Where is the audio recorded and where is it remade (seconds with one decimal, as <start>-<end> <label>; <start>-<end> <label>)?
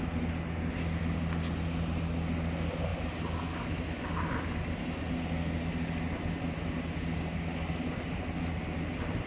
0.0-9.3 recorded